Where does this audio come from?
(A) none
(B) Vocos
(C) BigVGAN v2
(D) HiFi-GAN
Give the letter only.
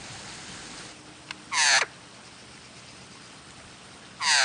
A